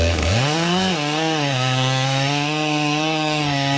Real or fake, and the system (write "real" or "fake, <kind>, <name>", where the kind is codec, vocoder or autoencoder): fake, codec, SNAC